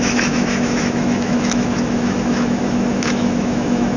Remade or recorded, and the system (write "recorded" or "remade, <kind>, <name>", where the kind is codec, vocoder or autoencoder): remade, autoencoder, DAC-VAE